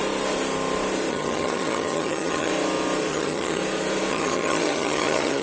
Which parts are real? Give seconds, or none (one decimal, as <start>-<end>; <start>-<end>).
0.0-1.1; 2.5-3.1; 3.6-4.1